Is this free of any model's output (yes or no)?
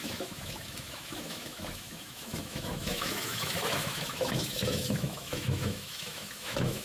no